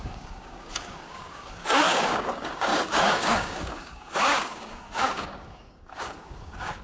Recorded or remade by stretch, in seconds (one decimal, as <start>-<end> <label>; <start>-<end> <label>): 0.0-6.8 remade